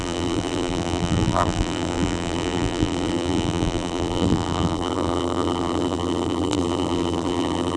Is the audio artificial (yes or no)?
yes